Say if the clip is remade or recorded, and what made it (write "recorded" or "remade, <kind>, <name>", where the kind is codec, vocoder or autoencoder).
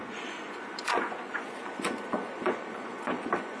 remade, vocoder, Vocos